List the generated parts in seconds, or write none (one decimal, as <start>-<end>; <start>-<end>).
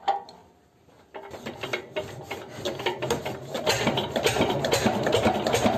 none